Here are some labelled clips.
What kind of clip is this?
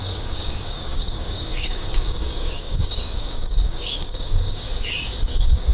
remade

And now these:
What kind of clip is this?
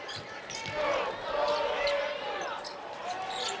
recorded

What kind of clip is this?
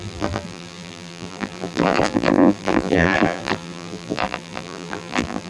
remade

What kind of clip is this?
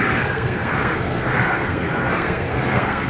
remade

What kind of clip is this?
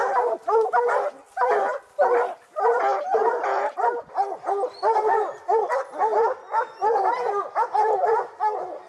recorded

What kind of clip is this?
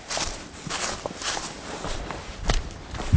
remade